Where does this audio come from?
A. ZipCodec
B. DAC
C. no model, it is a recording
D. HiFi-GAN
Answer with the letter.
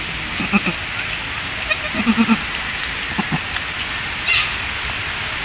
C